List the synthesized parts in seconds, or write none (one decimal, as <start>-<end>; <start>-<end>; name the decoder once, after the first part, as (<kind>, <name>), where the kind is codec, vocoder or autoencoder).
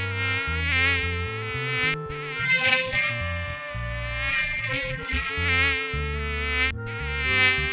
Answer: 2.4-3.1 (vocoder, BigVGAN v2); 4.3-5.3